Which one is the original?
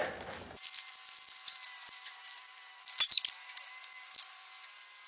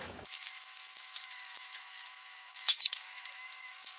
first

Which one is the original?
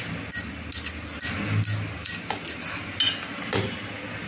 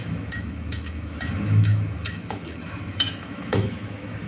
first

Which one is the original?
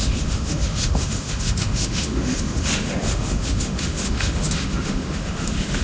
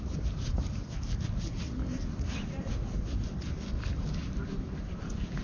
second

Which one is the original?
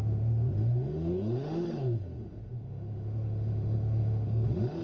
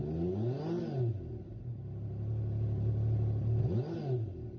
second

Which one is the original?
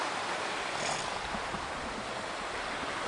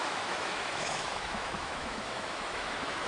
first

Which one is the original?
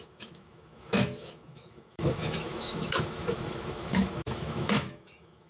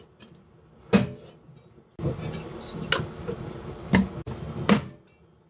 second